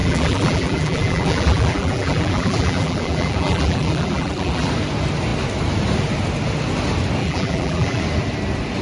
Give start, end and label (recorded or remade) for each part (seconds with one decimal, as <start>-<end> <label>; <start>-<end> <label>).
0.0-4.7 remade; 4.7-7.2 recorded; 7.2-8.0 remade; 8.0-8.8 recorded